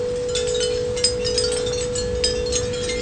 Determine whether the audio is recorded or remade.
recorded